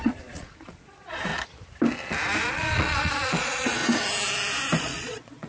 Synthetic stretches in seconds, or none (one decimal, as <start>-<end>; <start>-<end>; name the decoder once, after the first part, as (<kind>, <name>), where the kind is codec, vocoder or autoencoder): 0.0-1.3 (vocoder, Vocos); 2.5-3.8; 4.8-5.5